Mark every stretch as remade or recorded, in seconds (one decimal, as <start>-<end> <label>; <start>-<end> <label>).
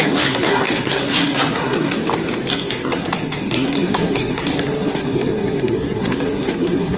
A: 0.0-2.0 remade; 2.0-2.5 recorded; 2.5-7.0 remade